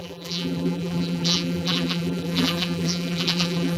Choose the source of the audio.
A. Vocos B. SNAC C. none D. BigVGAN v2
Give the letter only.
D